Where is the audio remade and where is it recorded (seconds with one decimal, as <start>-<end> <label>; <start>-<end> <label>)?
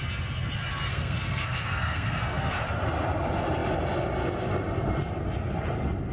0.0-0.9 recorded; 0.9-2.6 remade; 2.6-6.1 recorded